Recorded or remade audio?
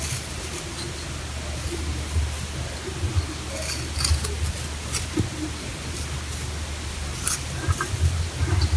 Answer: recorded